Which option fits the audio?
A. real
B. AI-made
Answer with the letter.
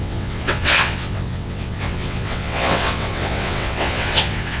B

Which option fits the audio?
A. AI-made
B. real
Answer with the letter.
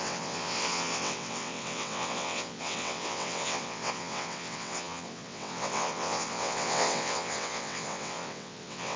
A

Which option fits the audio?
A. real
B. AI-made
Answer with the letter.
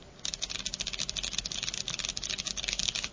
A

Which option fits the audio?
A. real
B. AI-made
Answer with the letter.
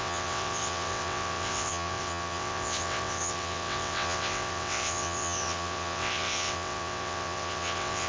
B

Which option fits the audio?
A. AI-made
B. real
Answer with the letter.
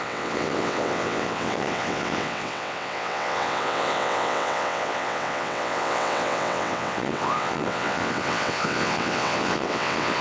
A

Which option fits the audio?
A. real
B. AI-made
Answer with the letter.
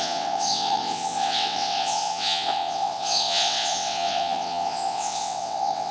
B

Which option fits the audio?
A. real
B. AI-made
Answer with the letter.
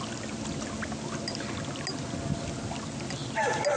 A